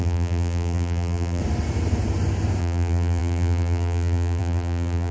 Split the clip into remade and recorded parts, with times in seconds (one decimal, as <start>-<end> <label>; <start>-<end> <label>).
0.0-1.4 remade; 1.4-2.6 recorded; 2.6-5.1 remade